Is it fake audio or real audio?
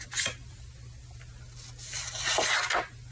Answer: real